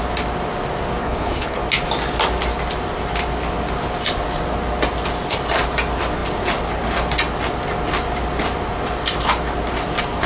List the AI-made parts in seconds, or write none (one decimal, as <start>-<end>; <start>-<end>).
1.0-1.6